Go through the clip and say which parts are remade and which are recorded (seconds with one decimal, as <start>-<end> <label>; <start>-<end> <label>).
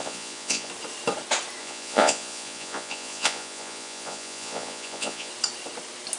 0.0-0.7 remade; 0.7-1.6 recorded; 1.6-5.3 remade; 5.3-6.2 recorded